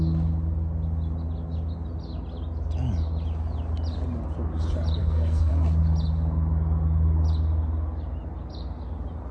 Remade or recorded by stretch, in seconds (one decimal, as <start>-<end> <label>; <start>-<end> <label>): 0.0-5.0 recorded; 5.0-5.5 remade; 5.5-9.3 recorded